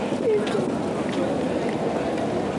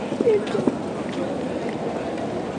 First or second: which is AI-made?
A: second